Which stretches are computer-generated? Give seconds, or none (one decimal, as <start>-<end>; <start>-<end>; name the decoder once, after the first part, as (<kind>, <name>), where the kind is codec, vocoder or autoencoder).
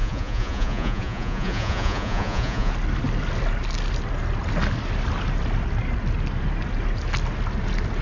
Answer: 0.0-2.7 (vocoder, Vocos)